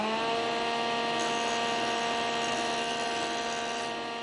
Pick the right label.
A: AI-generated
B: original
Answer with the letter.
B